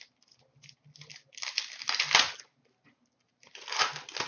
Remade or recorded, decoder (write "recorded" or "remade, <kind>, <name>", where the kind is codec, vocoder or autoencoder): recorded